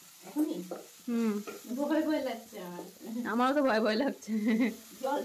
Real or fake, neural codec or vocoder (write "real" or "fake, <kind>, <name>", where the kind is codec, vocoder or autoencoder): real